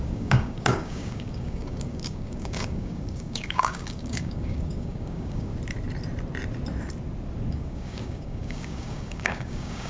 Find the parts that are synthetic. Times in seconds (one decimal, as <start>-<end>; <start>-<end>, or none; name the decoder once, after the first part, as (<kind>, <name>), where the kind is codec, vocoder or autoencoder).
0.0-5.5 (codec, DAC); 7.5-9.9